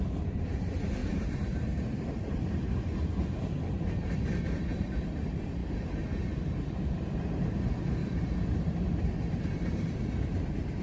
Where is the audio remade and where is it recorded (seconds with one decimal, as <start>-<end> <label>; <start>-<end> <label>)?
0.0-5.6 remade; 5.6-6.3 recorded; 6.3-10.8 remade